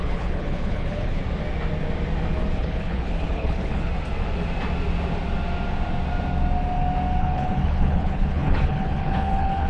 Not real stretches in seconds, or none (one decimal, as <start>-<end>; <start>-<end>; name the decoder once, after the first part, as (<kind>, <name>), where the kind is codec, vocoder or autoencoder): 0.0-1.2 (codec, HILCodec); 2.5-3.9; 7.2-9.7